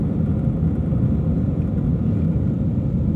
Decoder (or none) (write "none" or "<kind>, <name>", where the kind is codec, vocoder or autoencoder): none